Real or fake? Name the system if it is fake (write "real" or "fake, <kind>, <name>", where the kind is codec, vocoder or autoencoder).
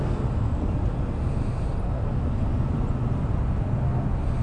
real